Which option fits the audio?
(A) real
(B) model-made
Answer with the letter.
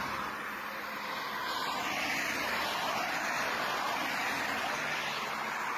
A